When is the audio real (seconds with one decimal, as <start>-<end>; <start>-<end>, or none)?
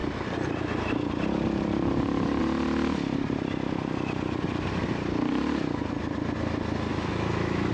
0.0-6.9